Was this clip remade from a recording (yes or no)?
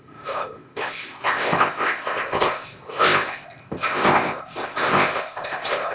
yes